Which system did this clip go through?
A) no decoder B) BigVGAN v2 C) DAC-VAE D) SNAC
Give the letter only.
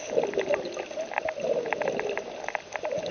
A